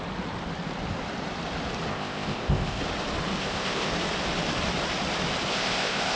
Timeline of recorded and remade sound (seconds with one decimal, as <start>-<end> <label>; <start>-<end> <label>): 0.0-1.9 recorded; 1.9-2.8 remade; 2.8-3.4 recorded; 3.4-3.9 remade; 3.9-5.5 recorded; 5.5-6.2 remade